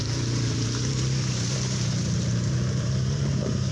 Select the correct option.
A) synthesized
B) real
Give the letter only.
A